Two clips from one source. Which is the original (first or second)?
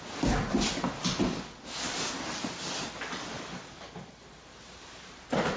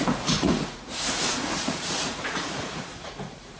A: first